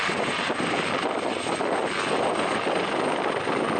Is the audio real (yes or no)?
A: yes